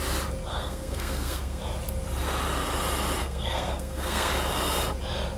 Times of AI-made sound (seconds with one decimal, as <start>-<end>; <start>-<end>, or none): 0.5-1.6; 3.2-4.3